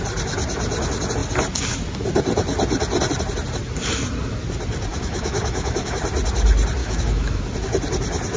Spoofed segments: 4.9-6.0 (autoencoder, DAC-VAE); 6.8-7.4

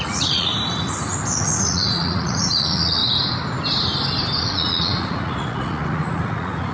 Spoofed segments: 0.0-0.5 (vocoder, Vocos); 1.3-3.0; 4.4-6.7

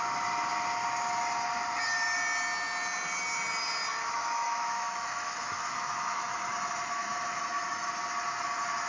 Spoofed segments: 3.9-7.9 (autoencoder, DAC-VAE)

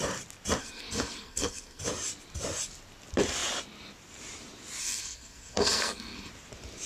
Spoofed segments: 0.6-1.8 (codec, SNAC); 4.8-6.3